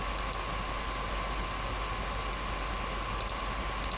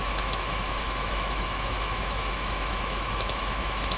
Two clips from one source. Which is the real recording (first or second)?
first